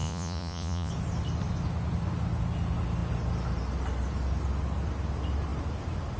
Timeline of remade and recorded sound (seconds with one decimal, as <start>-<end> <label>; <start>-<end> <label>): 0.0-0.9 remade; 0.9-6.2 recorded